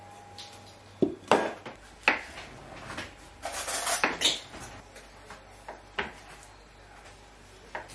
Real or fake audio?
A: real